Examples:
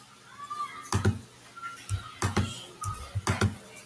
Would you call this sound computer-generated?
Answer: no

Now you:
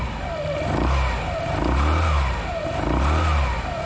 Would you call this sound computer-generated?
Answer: no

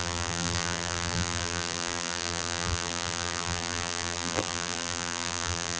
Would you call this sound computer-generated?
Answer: yes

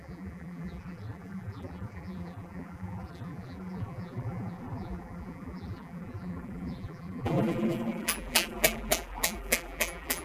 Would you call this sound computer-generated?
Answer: yes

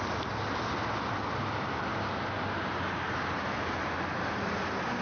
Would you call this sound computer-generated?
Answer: no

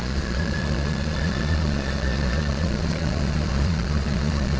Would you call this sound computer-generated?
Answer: yes